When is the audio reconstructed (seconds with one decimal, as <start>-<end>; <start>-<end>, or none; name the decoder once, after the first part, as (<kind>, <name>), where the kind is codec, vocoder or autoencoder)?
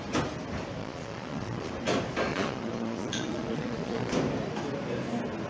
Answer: 0.8-1.7 (vocoder, Vocos); 2.3-4.1